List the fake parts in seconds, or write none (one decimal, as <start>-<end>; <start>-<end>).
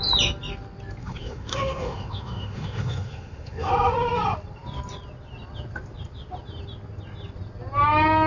1.0-3.7